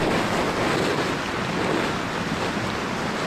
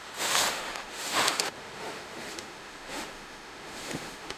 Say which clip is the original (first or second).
first